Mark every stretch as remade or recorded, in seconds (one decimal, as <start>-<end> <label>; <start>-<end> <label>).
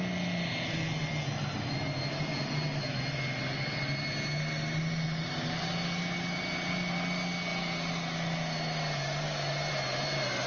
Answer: 0.0-10.5 recorded